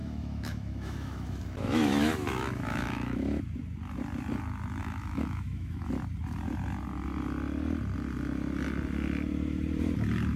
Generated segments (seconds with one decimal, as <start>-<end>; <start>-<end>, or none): 0.0-3.4; 4.8-5.9